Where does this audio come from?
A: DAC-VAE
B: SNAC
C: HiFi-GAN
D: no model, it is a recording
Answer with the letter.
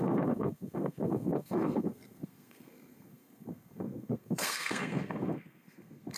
B